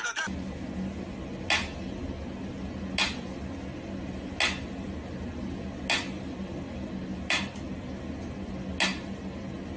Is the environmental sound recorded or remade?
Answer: recorded